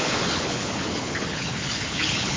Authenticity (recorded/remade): remade